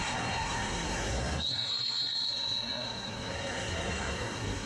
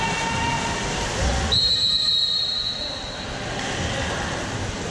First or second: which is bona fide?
second